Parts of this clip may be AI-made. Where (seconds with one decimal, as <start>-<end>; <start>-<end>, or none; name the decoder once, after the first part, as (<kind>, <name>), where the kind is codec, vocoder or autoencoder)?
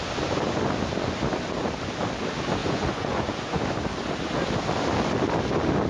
2.6-3.6 (vocoder, Vocos)